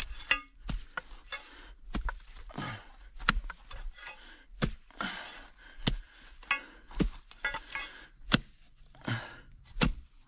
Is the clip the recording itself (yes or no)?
yes